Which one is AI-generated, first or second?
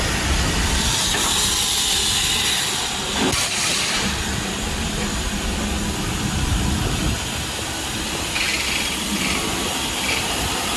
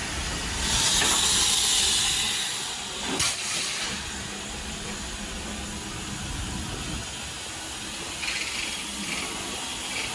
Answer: first